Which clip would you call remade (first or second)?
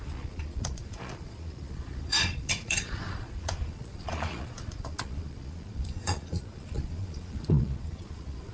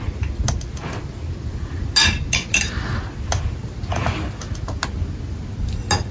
first